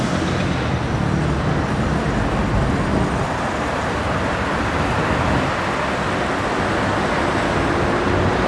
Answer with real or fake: real